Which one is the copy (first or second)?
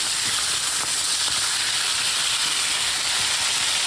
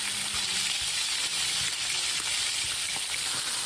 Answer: second